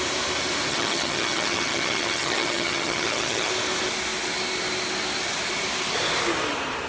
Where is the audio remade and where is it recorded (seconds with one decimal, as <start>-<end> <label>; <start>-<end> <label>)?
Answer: 0.0-0.7 recorded; 0.7-3.5 remade; 3.5-6.9 recorded